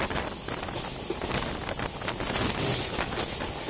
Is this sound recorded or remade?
recorded